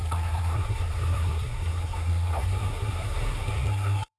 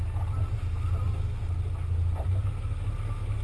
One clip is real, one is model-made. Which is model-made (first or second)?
first